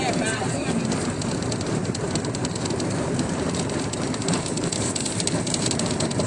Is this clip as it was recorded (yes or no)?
no